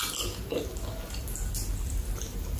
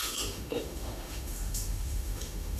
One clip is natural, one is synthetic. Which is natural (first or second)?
first